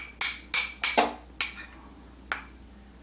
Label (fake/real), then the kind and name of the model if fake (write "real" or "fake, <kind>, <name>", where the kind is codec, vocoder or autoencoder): real